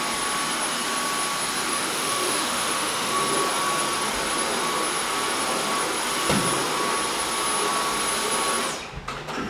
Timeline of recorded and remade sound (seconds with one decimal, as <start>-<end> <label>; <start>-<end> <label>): 0.0-1.7 recorded; 1.7-3.2 remade; 3.2-9.5 recorded

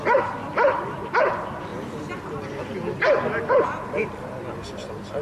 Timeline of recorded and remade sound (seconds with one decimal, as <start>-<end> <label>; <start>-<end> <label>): 0.0-5.2 recorded

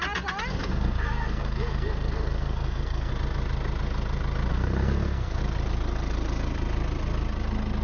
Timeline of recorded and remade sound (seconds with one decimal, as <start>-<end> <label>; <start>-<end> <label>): 0.0-0.6 recorded; 0.6-3.1 remade; 3.1-4.5 recorded; 4.5-5.4 remade; 5.4-7.8 recorded